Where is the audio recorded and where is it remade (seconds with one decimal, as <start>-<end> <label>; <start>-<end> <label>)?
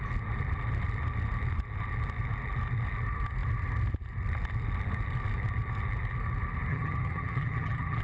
0.0-6.7 recorded; 6.7-8.0 remade